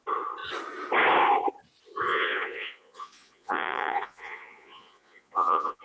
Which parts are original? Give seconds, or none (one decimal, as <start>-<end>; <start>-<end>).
0.0-2.1